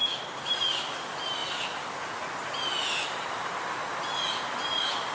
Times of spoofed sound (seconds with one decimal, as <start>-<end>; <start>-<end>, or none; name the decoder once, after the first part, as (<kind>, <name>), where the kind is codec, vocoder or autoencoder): none